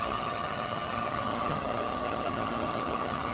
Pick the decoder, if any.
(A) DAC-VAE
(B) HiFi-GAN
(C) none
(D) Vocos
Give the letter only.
B